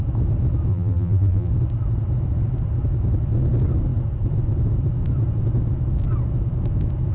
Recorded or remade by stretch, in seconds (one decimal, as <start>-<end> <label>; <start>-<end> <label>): 0.0-0.7 recorded; 0.7-1.5 remade; 1.5-7.1 recorded

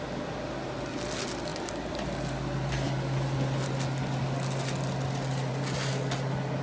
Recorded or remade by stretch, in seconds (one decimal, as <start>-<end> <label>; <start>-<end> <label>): 0.0-6.6 recorded

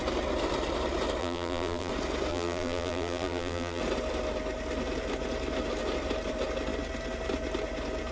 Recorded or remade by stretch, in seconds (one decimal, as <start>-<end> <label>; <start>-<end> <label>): 0.0-1.2 recorded; 1.2-1.9 remade; 1.9-2.3 recorded; 2.3-3.8 remade; 3.8-8.1 recorded